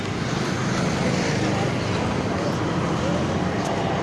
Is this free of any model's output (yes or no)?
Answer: yes